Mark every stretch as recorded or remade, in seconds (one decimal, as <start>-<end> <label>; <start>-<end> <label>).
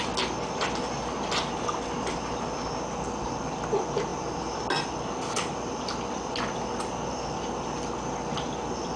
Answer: 0.0-9.0 recorded